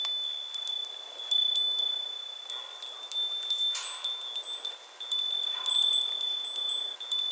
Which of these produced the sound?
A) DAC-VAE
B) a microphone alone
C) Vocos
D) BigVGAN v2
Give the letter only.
B